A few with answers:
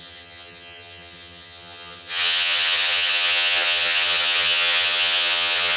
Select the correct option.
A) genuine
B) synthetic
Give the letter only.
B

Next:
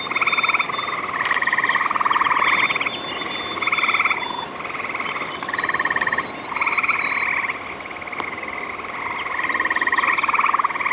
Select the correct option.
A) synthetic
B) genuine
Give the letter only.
B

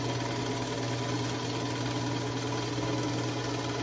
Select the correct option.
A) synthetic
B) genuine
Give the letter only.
B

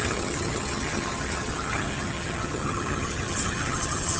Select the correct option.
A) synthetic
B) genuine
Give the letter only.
A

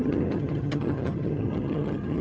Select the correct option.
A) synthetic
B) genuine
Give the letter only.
A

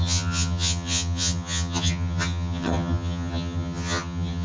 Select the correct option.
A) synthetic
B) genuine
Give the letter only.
A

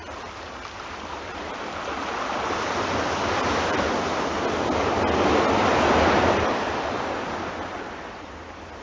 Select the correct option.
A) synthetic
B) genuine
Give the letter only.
B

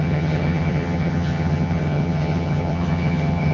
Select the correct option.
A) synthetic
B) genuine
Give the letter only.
A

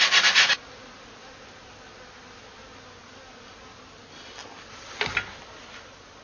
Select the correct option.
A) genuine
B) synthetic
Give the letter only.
A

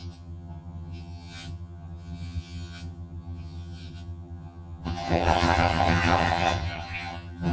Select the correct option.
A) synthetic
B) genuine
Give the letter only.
A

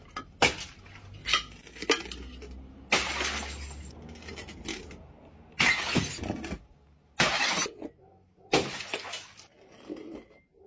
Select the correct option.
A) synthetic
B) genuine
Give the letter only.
B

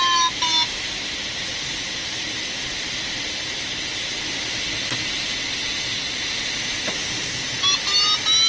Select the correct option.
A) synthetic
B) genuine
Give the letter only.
B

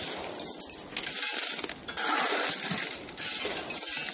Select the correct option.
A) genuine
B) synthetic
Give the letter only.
A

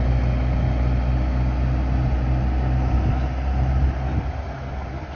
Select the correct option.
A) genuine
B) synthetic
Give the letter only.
A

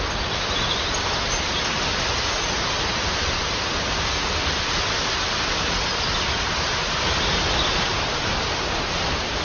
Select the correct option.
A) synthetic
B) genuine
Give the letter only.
B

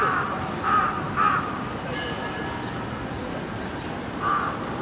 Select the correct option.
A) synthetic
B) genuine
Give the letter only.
B